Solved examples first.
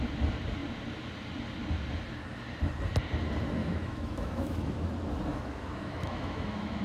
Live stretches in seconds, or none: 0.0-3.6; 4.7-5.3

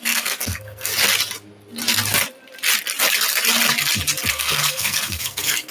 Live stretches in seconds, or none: 0.9-4.3

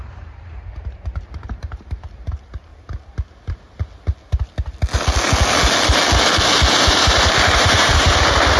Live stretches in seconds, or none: 2.7-6.9

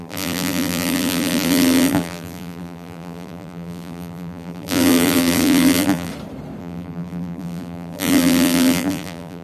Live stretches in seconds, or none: 6.1-6.6

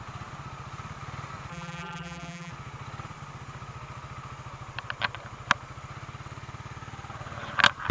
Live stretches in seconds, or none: 0.0-1.5; 2.5-7.9

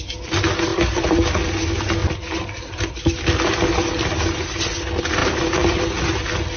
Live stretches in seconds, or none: 0.0-0.7; 1.5-2.0; 3.0-5.2; 6.0-6.6